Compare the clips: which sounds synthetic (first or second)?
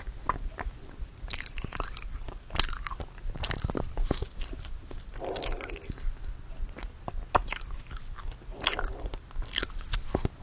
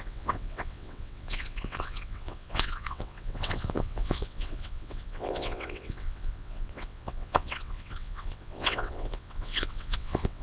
second